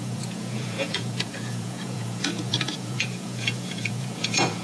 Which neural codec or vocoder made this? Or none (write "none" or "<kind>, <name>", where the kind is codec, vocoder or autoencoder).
vocoder, Vocos